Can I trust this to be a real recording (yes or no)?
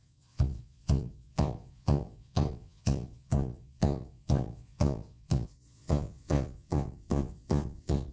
no